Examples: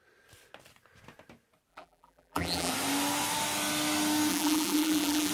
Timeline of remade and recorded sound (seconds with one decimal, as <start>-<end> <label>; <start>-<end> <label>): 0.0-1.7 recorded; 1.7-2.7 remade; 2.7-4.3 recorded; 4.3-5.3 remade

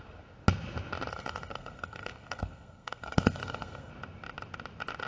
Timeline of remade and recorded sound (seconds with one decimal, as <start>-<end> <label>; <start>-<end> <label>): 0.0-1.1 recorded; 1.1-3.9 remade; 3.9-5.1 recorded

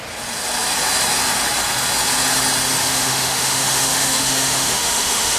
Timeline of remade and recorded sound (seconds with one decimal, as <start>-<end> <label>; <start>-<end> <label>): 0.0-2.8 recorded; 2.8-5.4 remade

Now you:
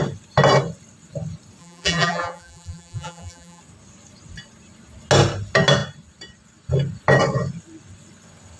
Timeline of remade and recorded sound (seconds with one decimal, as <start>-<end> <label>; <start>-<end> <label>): 0.0-1.6 recorded; 1.6-3.6 remade; 3.6-8.6 recorded

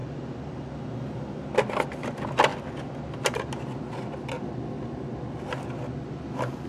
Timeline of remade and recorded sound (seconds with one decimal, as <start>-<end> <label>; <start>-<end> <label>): 0.0-6.7 recorded

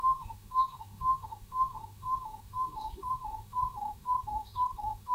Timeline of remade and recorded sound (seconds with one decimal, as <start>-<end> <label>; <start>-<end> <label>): 0.0-5.1 remade

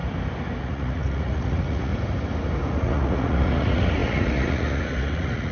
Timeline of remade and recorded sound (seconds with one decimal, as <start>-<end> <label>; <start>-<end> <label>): 0.0-0.6 recorded; 0.6-1.9 remade; 1.9-2.7 recorded; 2.7-5.5 remade